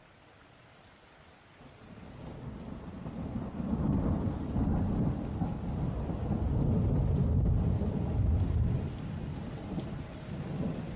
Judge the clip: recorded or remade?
recorded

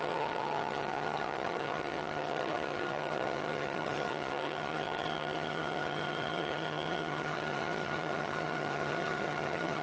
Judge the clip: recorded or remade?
remade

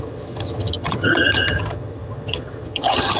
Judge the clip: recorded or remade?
remade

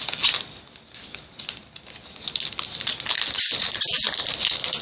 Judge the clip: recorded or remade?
recorded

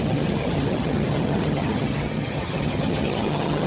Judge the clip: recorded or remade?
remade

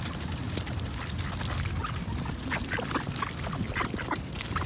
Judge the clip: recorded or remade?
recorded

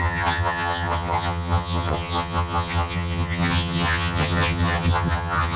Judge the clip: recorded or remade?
remade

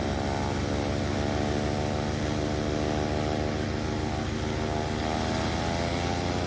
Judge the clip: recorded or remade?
recorded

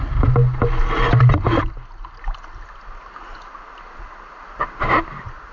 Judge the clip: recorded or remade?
recorded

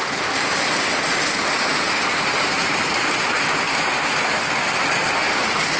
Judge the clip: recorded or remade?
recorded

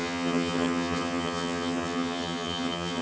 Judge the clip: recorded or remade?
remade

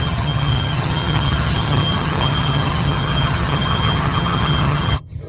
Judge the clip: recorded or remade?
remade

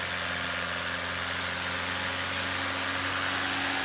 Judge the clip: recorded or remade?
recorded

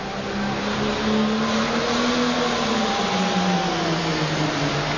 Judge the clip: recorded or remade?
recorded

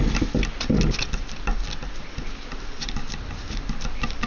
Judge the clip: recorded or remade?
recorded